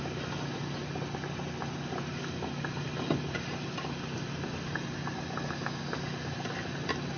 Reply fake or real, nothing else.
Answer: real